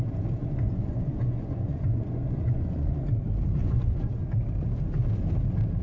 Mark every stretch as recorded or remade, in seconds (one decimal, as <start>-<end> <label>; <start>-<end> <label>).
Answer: 0.0-0.4 recorded; 0.4-3.0 remade; 3.0-3.6 recorded; 3.6-4.2 remade; 4.2-5.8 recorded